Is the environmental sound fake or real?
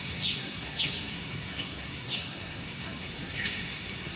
fake